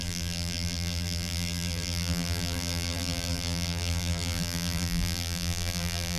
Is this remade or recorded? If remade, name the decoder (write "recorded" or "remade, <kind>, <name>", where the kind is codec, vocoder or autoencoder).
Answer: remade, vocoder, BigVGAN v2